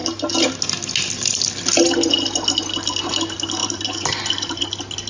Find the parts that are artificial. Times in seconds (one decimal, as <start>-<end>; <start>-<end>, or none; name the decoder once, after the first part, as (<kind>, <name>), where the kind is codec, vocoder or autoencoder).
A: 3.6-4.6 (vocoder, BigVGAN v2)